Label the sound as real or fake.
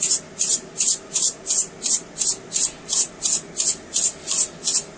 real